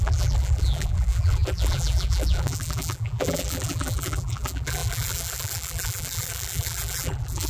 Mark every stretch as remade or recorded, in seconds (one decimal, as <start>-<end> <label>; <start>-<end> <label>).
0.0-7.5 remade